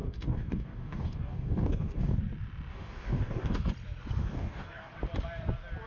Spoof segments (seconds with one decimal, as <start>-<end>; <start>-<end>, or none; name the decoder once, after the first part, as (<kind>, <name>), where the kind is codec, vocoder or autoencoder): 0.0-2.2 (codec, DAC); 2.7-3.7; 4.2-4.9